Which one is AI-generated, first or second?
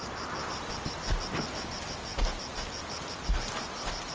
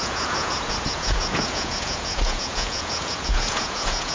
second